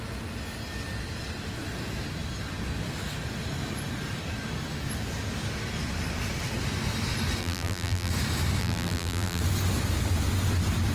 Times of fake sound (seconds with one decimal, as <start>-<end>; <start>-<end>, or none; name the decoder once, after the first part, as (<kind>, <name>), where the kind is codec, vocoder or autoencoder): 7.4-8.1 (vocoder, BigVGAN v2); 8.6-9.4